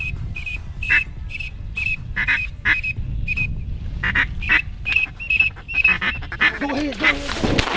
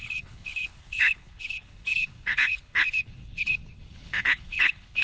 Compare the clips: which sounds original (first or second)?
first